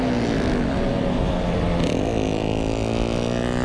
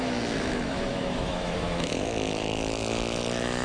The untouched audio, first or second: first